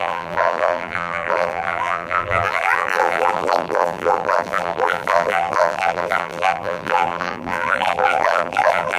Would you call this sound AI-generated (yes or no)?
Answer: yes